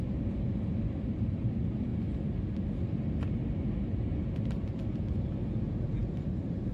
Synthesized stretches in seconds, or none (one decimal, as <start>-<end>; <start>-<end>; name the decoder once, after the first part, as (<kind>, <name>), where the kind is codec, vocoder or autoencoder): 0.0-1.9 (vocoder, BigVGAN v2); 3.3-4.8; 6.0-6.7

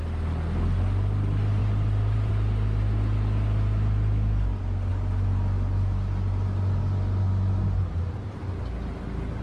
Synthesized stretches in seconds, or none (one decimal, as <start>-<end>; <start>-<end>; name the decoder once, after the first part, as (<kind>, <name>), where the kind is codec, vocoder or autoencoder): 1.6-2.3 (vocoder, BigVGAN v2)

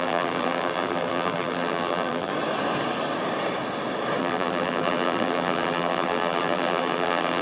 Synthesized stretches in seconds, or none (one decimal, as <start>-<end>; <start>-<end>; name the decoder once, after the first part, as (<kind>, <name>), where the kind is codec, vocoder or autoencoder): 0.0-2.3 (vocoder, BigVGAN v2); 4.2-7.4

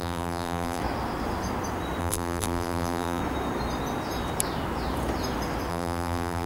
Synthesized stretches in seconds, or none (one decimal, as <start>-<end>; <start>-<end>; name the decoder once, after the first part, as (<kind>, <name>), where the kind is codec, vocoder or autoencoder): 0.0-0.8 (vocoder, BigVGAN v2); 2.0-3.2; 5.7-6.5